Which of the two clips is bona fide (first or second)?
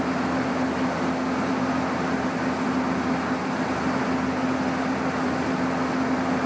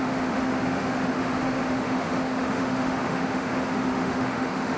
first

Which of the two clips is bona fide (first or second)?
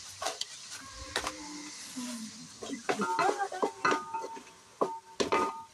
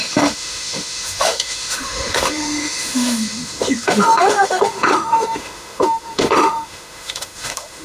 first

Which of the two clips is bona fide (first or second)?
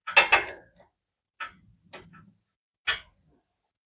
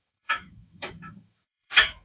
first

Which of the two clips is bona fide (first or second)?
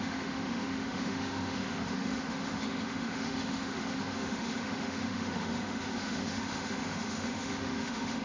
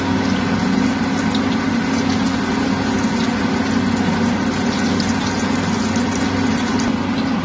second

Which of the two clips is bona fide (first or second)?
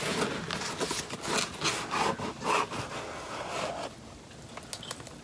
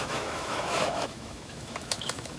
first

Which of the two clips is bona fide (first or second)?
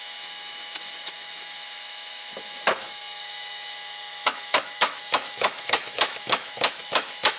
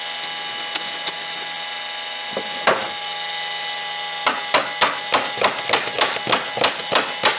second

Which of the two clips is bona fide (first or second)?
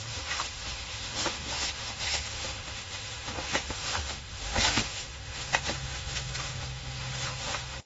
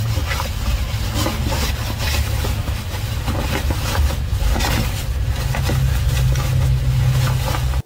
second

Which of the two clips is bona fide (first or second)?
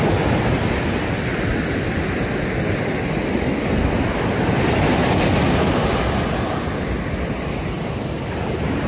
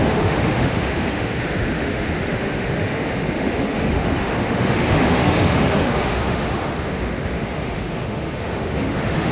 first